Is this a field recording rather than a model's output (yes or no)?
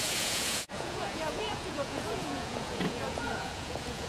no